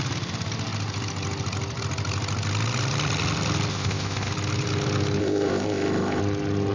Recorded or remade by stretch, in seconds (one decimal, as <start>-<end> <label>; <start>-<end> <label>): 0.0-3.7 recorded; 3.7-4.3 remade; 4.3-5.2 recorded; 5.2-6.2 remade; 6.2-6.7 recorded